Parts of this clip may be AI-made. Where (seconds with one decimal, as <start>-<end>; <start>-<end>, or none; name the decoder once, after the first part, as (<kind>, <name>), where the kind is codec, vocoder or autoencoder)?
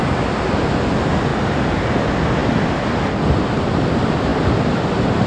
1.3-2.0 (vocoder, BigVGAN v2)